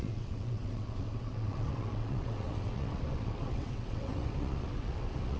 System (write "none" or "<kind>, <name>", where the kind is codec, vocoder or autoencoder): vocoder, WaveNeXt